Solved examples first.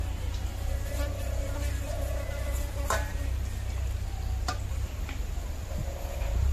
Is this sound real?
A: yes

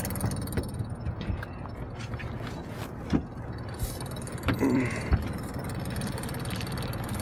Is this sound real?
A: yes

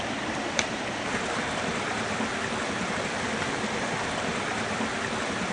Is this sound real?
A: yes